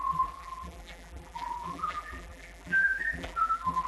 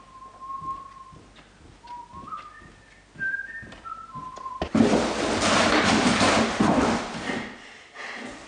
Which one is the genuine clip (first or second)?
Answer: second